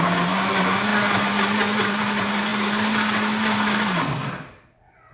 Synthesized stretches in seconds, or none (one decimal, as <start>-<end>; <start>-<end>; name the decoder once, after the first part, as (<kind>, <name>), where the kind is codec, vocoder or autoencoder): none